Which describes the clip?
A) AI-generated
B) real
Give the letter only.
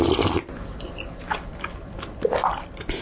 B